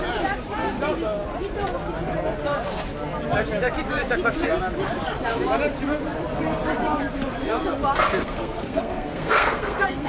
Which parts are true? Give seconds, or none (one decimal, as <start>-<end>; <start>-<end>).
0.0-8.2